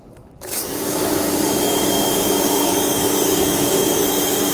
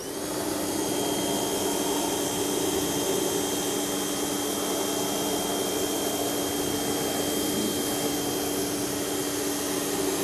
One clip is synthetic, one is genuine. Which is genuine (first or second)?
second